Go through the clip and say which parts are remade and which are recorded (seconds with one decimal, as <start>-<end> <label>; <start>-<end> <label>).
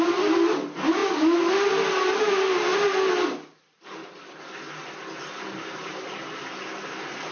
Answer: 0.0-7.3 recorded